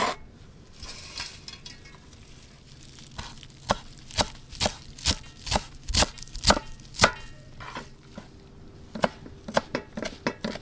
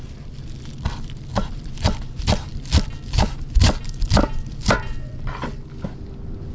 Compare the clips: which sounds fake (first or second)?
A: second